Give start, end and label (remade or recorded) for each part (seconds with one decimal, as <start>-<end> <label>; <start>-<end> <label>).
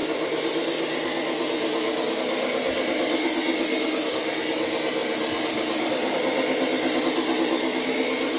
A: 0.0-8.4 recorded